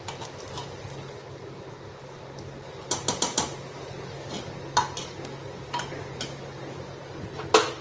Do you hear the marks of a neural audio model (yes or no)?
no